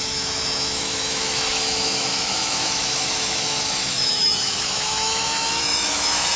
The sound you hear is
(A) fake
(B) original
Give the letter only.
A